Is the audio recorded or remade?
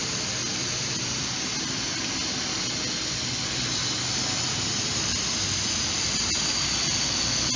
recorded